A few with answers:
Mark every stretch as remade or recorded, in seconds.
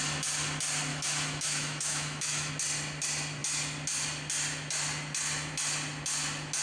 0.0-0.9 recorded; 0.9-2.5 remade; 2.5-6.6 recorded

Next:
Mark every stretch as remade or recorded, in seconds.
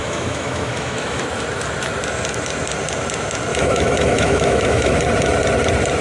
0.0-1.2 remade; 1.2-3.5 recorded; 3.5-5.0 remade; 5.0-6.0 recorded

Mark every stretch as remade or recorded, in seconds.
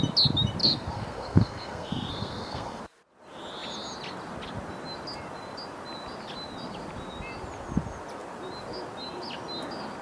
0.0-0.6 recorded; 0.6-2.8 remade; 2.8-10.0 recorded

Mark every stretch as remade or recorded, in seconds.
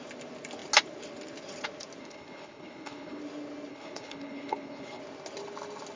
0.0-2.0 recorded; 2.0-3.2 remade; 3.2-3.7 recorded; 3.7-5.0 remade; 5.0-6.0 recorded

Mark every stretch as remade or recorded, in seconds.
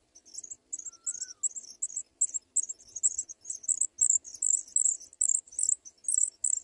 0.0-6.6 recorded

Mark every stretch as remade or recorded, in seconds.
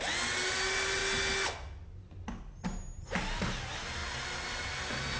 0.0-5.2 recorded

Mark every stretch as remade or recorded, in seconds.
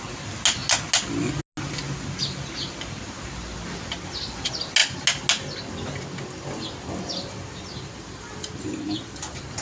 0.0-9.6 recorded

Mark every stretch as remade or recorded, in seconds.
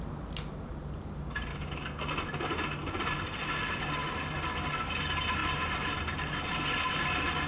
0.0-1.5 recorded; 1.5-2.1 remade; 2.1-7.5 recorded